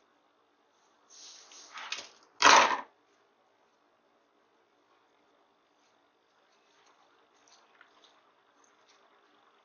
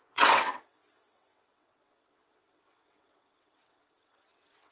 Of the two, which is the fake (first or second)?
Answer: second